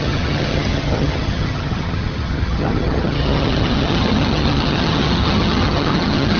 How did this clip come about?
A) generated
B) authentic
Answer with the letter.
A